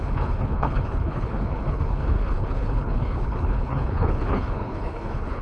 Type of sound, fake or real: fake